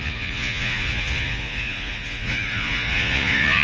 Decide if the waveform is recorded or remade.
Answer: remade